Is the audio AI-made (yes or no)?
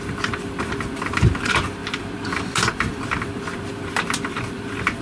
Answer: yes